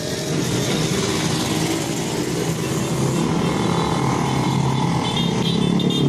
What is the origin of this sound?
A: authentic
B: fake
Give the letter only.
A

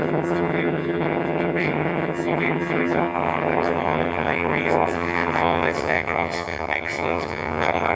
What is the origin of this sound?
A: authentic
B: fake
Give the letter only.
B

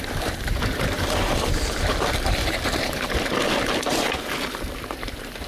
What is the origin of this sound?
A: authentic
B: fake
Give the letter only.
B